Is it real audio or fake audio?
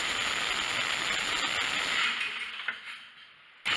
real